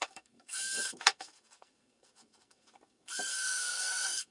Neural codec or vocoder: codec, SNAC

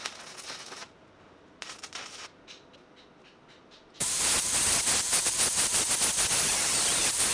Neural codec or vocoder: none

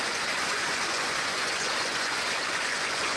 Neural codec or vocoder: vocoder, Vocos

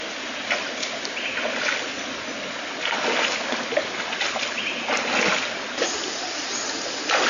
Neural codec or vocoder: none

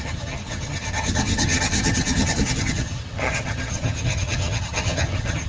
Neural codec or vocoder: vocoder, HiFi-GAN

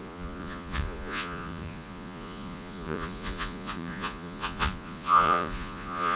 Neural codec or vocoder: vocoder, Vocos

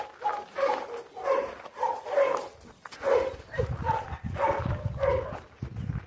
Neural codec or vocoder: none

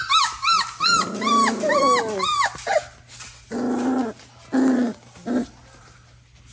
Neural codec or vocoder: none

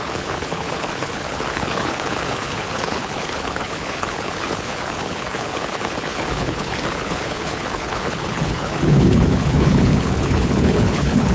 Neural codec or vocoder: codec, HILCodec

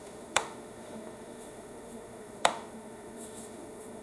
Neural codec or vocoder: autoencoder, DAC-VAE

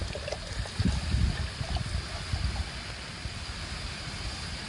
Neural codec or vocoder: none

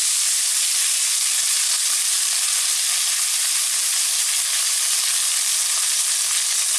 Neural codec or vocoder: none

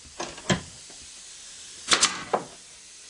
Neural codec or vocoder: vocoder, BigVGAN v2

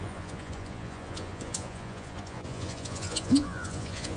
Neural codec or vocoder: vocoder, Vocos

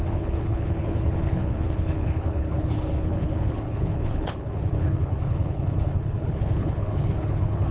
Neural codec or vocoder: codec, HILCodec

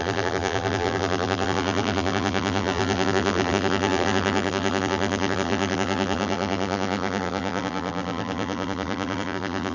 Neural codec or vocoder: vocoder, BigVGAN v2